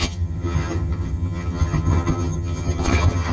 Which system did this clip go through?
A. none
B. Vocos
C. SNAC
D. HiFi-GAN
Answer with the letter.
D